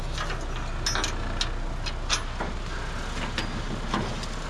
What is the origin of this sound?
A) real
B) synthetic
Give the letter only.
A